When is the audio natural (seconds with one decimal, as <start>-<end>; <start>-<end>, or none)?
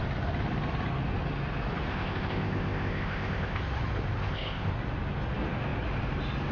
0.0-1.9; 3.6-4.2; 4.7-6.5